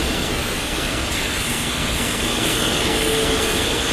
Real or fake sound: fake